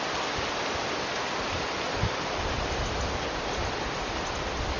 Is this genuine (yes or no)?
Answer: yes